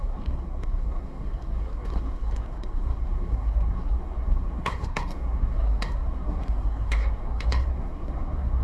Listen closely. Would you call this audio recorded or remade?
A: remade